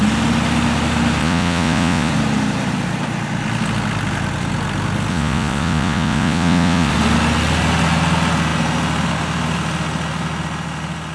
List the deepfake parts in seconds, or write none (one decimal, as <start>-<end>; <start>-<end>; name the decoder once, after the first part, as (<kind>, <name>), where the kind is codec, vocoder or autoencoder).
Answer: 1.2-2.1 (vocoder, Vocos); 5.1-6.9